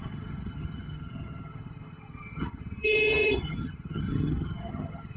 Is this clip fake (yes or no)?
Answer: yes